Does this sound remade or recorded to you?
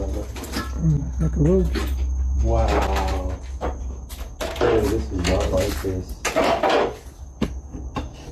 recorded